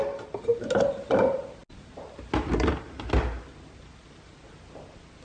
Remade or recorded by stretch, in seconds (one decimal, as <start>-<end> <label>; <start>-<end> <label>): 0.0-5.2 recorded